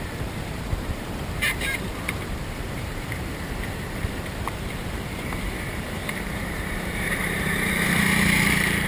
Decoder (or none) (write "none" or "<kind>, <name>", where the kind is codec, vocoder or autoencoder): vocoder, BigVGAN v2